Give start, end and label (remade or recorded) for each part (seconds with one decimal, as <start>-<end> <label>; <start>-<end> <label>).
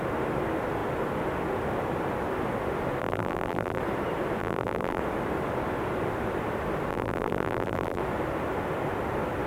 0.0-3.0 recorded; 3.0-3.8 remade; 3.8-4.4 recorded; 4.4-5.0 remade; 5.0-6.9 recorded; 6.9-8.0 remade; 8.0-9.5 recorded